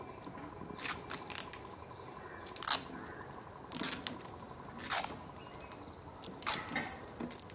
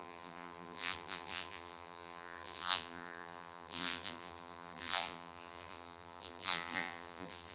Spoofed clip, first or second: second